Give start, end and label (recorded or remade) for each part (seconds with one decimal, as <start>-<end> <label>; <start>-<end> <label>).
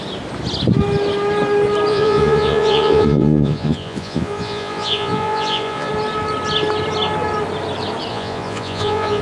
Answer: 0.0-1.9 recorded; 1.9-5.9 remade; 5.9-8.1 recorded; 8.1-9.2 remade